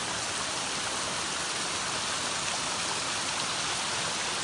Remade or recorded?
recorded